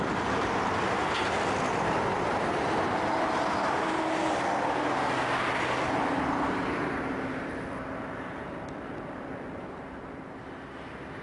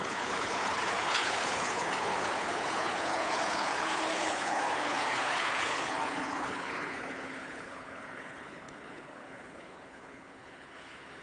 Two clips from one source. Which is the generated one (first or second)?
second